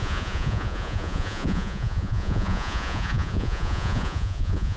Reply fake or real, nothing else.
fake